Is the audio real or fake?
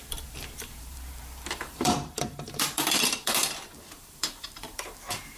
fake